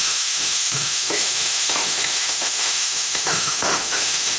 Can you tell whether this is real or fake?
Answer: fake